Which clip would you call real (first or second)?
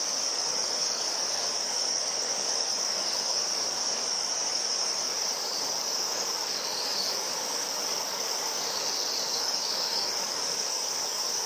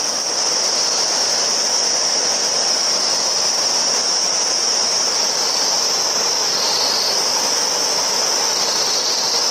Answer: second